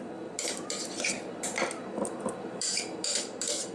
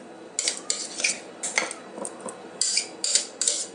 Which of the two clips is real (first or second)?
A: second